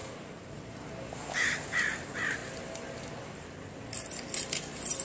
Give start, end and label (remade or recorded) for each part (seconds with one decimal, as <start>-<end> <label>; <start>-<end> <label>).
0.0-0.9 remade; 0.9-5.0 recorded